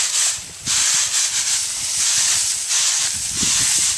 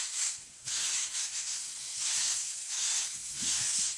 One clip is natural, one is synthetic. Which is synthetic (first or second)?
second